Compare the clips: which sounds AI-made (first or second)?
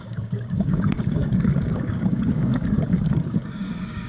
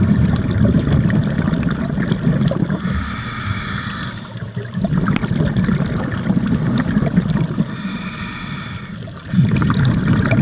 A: first